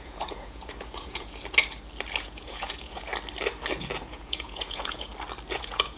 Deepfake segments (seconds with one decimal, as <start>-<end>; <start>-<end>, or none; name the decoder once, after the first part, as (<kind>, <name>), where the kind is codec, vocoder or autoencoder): 0.0-1.4 (vocoder, Vocos); 2.2-3.1; 4.0-5.1; 5.6-6.0